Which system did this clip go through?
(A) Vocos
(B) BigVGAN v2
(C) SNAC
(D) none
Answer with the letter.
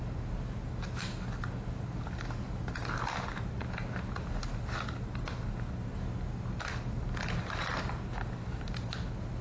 D